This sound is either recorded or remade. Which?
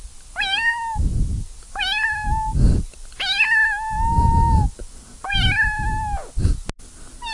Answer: recorded